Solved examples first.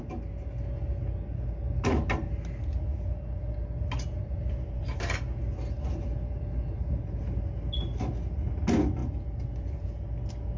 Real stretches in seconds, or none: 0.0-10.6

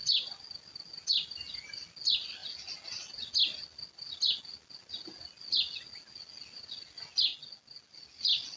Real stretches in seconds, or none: 0.0-8.6

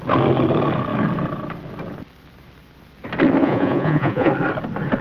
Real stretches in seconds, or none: 0.0-3.4; 4.3-5.0